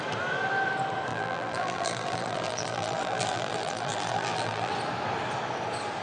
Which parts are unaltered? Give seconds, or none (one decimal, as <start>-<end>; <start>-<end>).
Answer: 0.0-1.1; 4.7-6.0